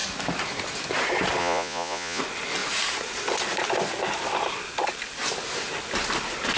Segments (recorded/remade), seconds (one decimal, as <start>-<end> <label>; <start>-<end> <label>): 0.0-1.4 recorded; 1.4-2.2 remade; 2.2-6.6 recorded